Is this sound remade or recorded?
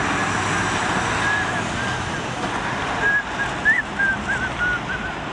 recorded